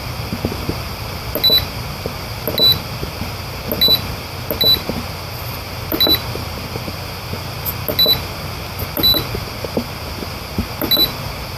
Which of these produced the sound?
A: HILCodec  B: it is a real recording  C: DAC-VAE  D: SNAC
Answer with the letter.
B